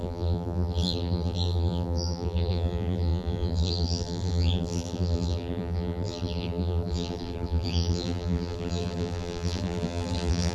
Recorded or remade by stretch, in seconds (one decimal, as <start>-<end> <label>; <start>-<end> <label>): 0.0-10.5 remade